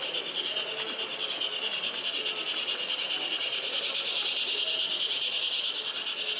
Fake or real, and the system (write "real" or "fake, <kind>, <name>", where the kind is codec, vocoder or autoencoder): real